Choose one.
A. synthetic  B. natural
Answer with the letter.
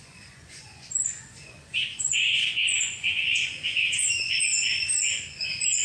A